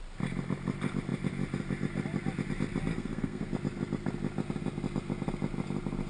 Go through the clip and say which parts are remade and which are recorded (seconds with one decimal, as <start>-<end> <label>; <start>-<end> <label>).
0.0-2.9 recorded; 2.9-3.5 remade; 3.5-6.1 recorded